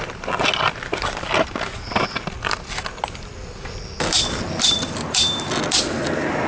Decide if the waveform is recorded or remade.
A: recorded